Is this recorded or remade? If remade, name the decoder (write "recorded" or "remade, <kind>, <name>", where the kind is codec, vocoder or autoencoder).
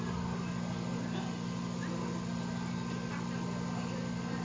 recorded